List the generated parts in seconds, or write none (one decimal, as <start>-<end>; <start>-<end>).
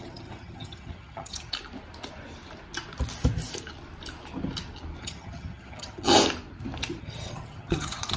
0.0-1.5; 5.0-6.1; 7.0-8.2